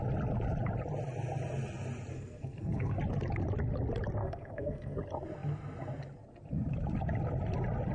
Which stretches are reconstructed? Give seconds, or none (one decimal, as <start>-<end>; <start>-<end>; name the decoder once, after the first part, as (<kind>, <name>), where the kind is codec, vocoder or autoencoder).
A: 2.1-3.0 (codec, SNAC); 4.2-5.0